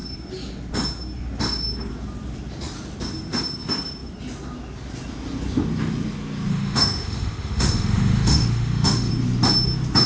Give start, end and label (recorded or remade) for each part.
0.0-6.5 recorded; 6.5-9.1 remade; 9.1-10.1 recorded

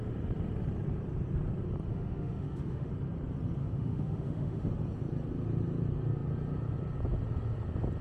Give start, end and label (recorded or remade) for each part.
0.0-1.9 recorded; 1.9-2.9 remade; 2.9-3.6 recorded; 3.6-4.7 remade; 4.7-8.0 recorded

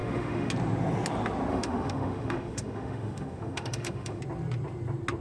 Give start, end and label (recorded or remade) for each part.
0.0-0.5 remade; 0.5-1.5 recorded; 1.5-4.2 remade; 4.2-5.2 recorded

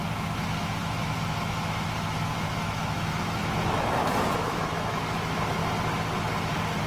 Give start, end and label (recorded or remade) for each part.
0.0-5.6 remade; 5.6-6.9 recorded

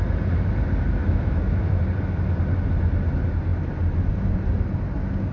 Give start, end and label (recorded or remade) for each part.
0.0-1.0 recorded; 1.0-1.8 remade; 1.8-5.3 recorded

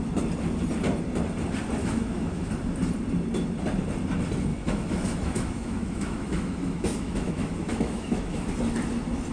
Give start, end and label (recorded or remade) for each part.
0.0-1.8 recorded; 1.8-2.5 remade; 2.5-4.5 recorded; 4.5-8.5 remade; 8.5-9.3 recorded

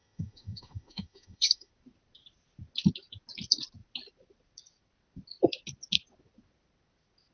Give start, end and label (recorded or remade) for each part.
0.0-1.7 remade; 1.7-7.3 recorded

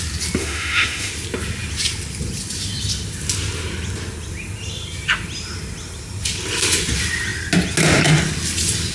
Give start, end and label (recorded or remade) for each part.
0.0-0.4 recorded; 0.4-1.1 remade; 1.1-8.9 recorded